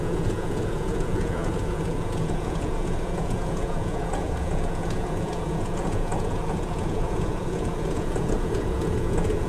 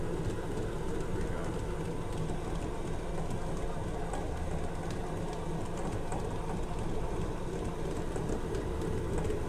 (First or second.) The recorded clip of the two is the second